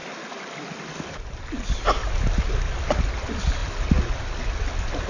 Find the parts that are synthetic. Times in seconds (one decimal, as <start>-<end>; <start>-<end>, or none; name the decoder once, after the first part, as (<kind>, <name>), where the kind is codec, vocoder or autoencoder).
none